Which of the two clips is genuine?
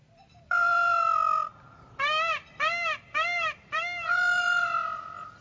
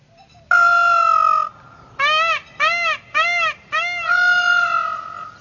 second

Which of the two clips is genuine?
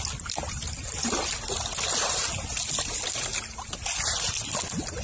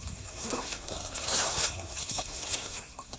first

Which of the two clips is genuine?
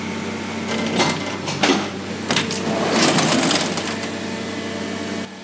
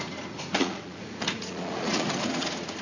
first